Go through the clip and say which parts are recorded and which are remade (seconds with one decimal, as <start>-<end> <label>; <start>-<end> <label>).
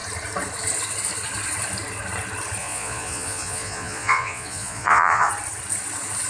0.0-2.6 recorded; 2.6-5.3 remade; 5.3-6.3 recorded